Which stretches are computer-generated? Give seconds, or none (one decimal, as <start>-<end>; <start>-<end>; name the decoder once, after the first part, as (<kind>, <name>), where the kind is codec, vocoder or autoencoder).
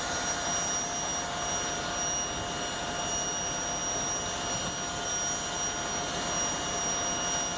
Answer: none